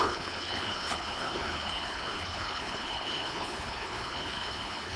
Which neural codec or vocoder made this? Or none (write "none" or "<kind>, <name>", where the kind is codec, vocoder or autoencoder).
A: codec, HILCodec